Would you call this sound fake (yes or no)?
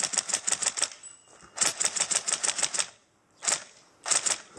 no